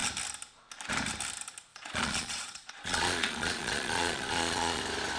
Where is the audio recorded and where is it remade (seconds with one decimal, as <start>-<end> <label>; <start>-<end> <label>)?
0.0-1.7 recorded; 1.7-4.8 remade; 4.8-5.2 recorded